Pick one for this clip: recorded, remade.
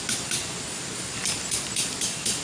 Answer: recorded